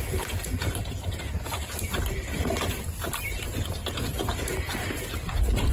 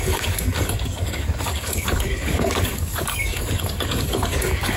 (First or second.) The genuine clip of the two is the first